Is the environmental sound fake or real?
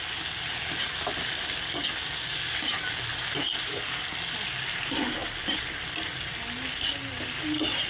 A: real